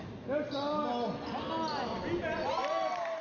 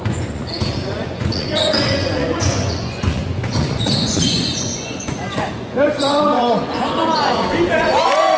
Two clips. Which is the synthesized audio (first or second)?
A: second